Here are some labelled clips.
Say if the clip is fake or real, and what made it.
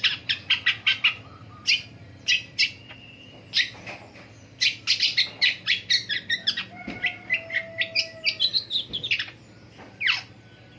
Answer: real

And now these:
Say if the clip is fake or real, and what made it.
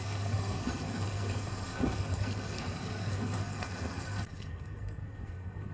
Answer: fake, codec, SNAC